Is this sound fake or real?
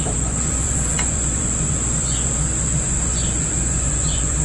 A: fake